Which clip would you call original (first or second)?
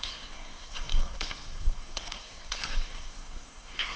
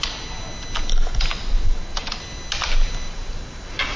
second